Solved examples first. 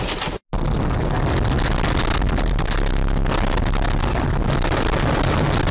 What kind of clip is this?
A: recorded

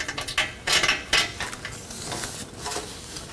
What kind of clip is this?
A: recorded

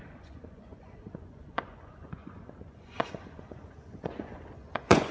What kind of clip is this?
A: remade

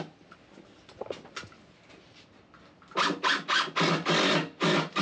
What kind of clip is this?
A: recorded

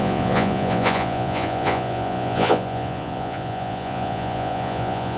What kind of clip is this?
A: remade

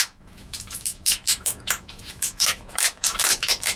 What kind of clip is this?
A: remade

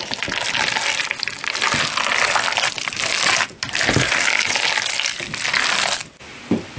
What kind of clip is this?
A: recorded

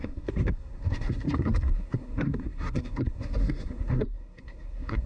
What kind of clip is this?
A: remade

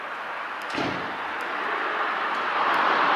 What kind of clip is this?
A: recorded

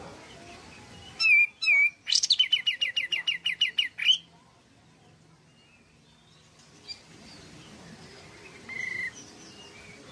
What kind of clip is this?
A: recorded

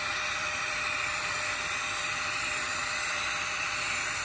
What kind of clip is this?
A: remade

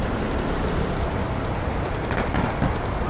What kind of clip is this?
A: recorded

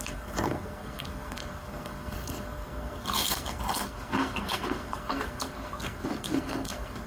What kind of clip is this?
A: remade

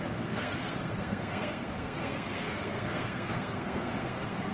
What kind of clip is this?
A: remade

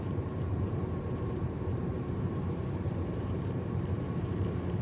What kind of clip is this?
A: remade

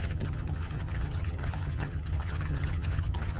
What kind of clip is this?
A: remade